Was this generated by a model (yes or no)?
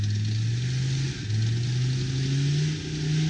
no